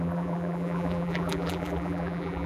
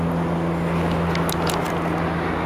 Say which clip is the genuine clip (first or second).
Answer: second